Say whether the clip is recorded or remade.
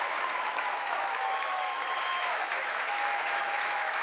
remade